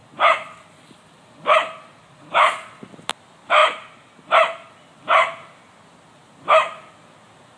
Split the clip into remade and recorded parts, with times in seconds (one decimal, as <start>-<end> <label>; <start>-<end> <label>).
0.0-3.1 remade; 3.1-3.6 recorded; 3.6-4.7 remade; 4.7-7.6 recorded